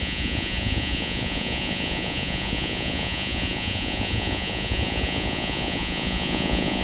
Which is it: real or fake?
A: fake